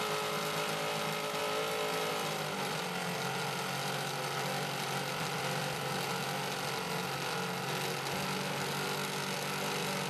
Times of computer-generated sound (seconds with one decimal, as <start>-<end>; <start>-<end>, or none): none